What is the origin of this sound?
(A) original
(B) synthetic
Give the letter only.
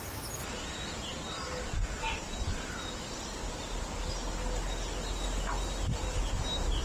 A